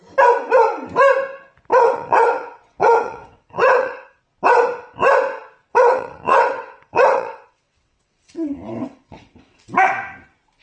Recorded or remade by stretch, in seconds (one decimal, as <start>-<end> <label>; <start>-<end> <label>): 0.0-1.7 recorded; 1.7-4.2 remade; 4.2-5.7 recorded; 5.7-9.9 remade; 9.9-10.6 recorded